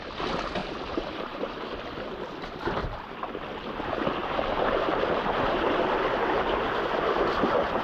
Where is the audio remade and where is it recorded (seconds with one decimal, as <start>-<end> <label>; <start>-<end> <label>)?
0.0-0.6 recorded; 0.6-1.6 remade; 1.6-4.2 recorded; 4.2-5.8 remade; 5.8-7.8 recorded